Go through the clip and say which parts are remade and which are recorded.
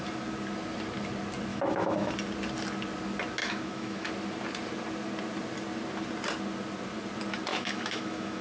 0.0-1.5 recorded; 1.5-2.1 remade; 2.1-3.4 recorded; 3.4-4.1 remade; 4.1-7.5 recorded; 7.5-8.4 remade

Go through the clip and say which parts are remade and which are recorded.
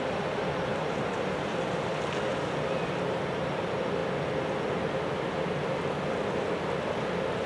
0.0-0.7 recorded; 0.7-1.6 remade; 1.6-7.5 recorded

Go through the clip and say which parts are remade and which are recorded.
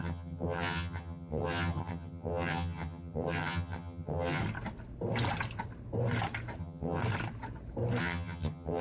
0.0-4.4 remade; 4.4-6.6 recorded; 6.6-7.0 remade; 7.0-8.0 recorded; 8.0-8.8 remade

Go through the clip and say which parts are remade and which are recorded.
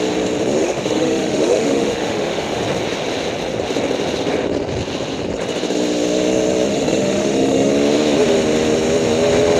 0.0-0.6 recorded; 0.6-2.6 remade; 2.6-6.7 recorded; 6.7-7.7 remade; 7.7-9.6 recorded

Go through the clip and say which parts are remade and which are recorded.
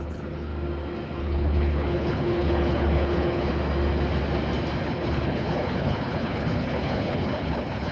0.0-0.5 remade; 0.5-1.2 recorded; 1.2-3.5 remade; 3.5-4.8 recorded; 4.8-7.9 remade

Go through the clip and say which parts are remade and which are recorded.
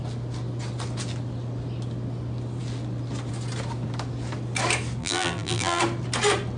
0.0-5.0 recorded; 5.0-5.8 remade; 5.8-6.6 recorded